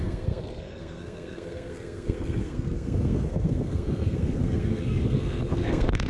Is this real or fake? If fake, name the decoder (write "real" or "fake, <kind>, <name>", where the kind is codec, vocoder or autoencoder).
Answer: fake, codec, SNAC